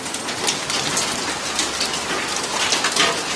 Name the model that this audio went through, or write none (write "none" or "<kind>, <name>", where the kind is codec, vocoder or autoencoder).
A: none